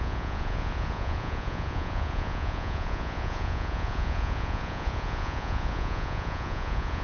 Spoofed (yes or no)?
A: yes